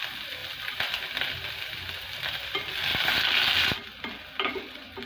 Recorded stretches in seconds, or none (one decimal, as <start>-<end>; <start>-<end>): 0.0-5.1